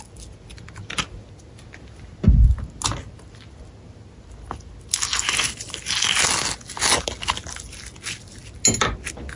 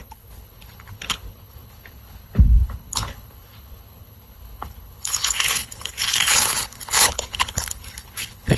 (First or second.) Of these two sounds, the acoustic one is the first